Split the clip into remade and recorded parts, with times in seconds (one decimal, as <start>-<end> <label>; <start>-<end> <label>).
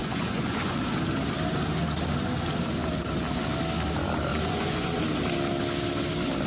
0.0-0.8 remade; 0.8-4.3 recorded; 4.3-5.0 remade; 5.0-6.5 recorded